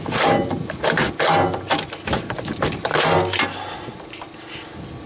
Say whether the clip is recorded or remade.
recorded